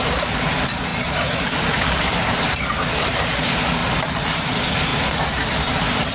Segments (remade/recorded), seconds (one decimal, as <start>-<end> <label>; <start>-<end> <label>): 0.0-3.8 remade; 3.8-4.3 recorded; 4.3-6.1 remade